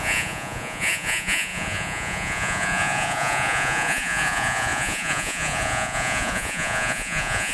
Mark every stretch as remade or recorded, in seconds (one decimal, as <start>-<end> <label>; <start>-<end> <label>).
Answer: 0.0-7.5 remade